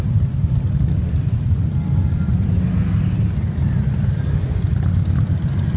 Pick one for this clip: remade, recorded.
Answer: recorded